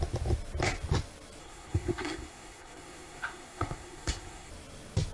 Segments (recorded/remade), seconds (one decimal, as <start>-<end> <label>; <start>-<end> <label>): 0.0-1.4 recorded; 1.4-4.5 remade; 4.5-5.1 recorded